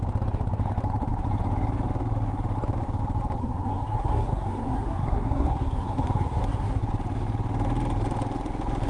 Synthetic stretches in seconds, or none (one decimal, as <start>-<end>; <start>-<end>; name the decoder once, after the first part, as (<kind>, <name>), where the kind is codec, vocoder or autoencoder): 3.4-6.8 (codec, SNAC)

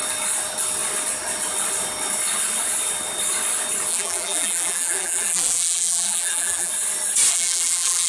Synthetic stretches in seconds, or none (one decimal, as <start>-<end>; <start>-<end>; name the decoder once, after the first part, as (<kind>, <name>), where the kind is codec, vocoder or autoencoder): 3.9-6.7 (vocoder, BigVGAN v2); 7.3-8.1

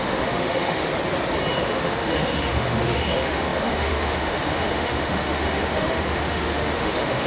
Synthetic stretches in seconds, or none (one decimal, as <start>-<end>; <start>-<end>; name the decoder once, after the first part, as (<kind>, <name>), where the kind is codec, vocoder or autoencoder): 0.0-0.9 (autoencoder, DAC-VAE); 1.6-7.3

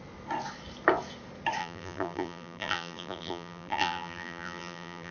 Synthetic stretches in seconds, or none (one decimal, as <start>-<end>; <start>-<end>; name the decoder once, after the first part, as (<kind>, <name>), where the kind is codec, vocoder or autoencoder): 1.6-5.1 (vocoder, BigVGAN v2)

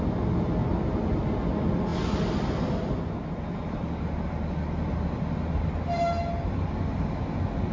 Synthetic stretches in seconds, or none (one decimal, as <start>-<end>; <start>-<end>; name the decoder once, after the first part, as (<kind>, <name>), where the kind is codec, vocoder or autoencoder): none

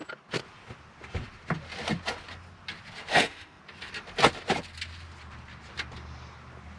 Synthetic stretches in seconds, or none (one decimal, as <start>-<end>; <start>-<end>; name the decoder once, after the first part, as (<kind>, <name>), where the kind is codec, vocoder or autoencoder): 3.1-3.6 (autoencoder, DAC-VAE)

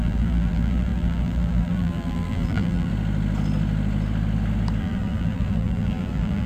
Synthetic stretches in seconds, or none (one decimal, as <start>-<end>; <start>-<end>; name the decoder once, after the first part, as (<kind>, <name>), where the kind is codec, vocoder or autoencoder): 0.0-2.9 (vocoder, BigVGAN v2); 4.8-6.5

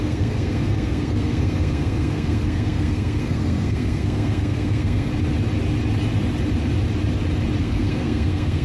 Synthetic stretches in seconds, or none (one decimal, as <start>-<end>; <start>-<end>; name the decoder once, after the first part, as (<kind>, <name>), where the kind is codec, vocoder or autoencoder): 0.0-5.1 (codec, SNAC); 7.6-8.6